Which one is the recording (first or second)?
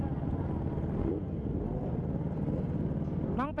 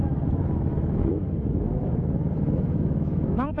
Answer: first